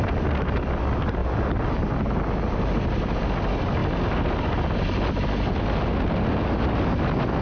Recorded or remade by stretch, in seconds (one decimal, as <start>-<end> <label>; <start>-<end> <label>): 0.0-1.2 recorded; 1.2-1.8 remade; 1.8-7.4 recorded